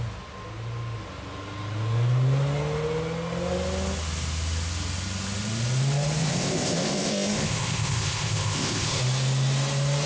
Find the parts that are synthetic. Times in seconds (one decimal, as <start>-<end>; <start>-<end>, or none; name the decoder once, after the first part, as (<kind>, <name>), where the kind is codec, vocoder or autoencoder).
6.2-9.0 (codec, ZipCodec)